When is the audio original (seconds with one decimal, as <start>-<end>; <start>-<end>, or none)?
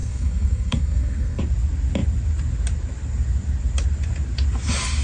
1.4-5.0